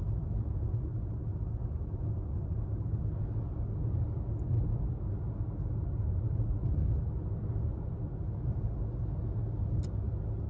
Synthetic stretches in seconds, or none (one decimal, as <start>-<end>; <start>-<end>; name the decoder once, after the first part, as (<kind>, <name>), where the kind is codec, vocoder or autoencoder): none

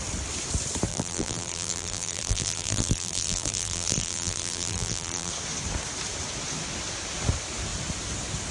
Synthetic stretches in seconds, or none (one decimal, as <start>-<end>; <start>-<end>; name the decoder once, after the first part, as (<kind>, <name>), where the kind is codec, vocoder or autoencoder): 0.9-5.3 (vocoder, BigVGAN v2)

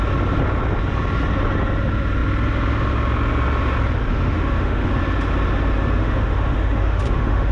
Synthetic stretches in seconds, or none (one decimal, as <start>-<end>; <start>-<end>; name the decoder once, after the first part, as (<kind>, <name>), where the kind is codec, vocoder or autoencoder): 4.1-4.9 (autoencoder, DAC-VAE); 6.0-7.5

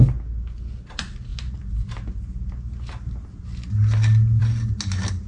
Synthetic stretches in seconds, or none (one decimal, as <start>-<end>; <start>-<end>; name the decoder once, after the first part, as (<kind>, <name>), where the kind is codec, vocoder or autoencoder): none

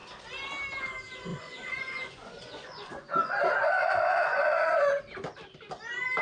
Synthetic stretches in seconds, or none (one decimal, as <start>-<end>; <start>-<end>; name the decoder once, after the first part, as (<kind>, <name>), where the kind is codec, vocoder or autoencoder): 1.3-5.0 (vocoder, Vocos)

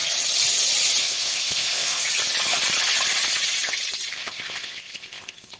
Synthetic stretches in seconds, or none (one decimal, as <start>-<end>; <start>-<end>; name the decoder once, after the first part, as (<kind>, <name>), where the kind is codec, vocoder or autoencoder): 1.0-2.0 (codec, ZipCodec); 4.1-5.6